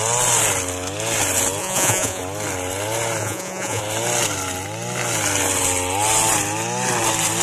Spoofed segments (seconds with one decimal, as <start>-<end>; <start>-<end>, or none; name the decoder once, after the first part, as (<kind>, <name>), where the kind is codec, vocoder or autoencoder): 1.6-2.2 (vocoder, Vocos); 3.2-3.8